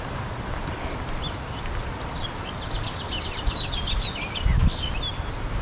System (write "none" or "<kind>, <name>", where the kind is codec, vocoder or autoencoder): none